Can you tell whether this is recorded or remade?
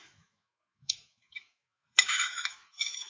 remade